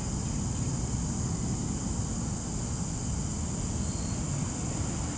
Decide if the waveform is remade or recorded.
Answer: recorded